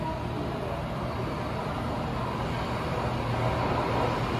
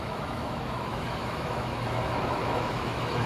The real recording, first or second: first